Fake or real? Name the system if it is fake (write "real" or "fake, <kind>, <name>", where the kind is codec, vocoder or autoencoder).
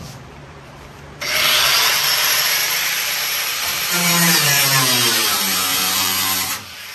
fake, vocoder, BigVGAN v2